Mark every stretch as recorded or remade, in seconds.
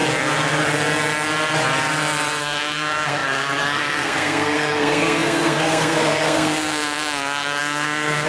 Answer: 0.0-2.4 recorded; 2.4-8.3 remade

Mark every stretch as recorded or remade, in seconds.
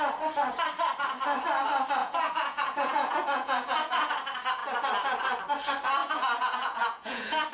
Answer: 0.0-2.0 recorded; 2.0-4.1 remade; 4.1-6.0 recorded; 6.0-7.5 remade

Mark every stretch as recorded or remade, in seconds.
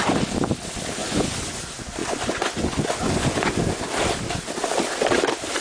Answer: 0.0-1.0 recorded; 1.0-1.6 remade; 1.6-2.0 recorded; 2.0-3.8 remade; 3.8-5.6 recorded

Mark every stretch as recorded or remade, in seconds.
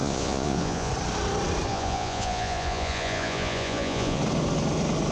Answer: 0.0-0.9 remade; 0.9-1.7 recorded; 1.7-4.2 remade; 4.2-5.1 recorded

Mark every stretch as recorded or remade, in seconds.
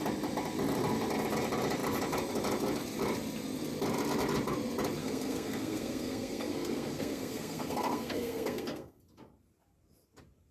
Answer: 0.0-5.0 recorded; 5.0-9.0 remade; 9.0-10.5 recorded